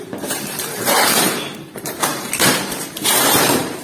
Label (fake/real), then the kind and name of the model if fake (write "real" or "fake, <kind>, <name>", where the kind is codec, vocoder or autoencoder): fake, vocoder, BigVGAN v2